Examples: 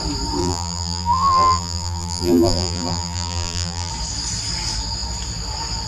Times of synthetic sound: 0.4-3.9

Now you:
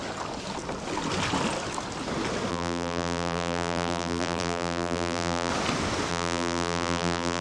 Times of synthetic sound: 2.5-5.5; 6.1-7.4

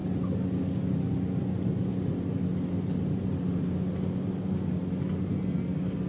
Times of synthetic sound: 0.0-1.1

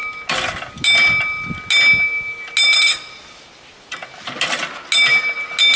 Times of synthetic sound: none